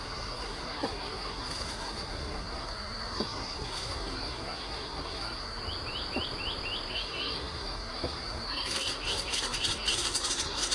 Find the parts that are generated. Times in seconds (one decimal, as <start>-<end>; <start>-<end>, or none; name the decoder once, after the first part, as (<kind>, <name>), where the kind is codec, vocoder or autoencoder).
0.0-5.6 (codec, SNAC); 6.9-10.7